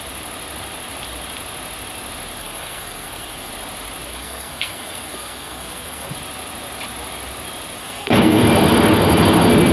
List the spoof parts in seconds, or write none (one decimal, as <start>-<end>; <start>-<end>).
2.4-3.5; 4.1-6.1; 7.8-8.4